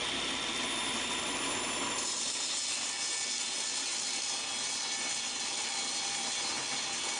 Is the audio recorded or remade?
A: recorded